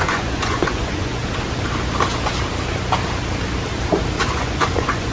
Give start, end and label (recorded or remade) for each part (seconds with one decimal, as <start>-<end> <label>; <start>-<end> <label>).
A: 0.0-1.2 remade; 1.2-4.3 recorded; 4.3-5.1 remade